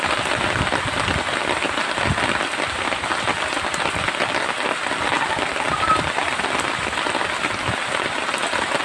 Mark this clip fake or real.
real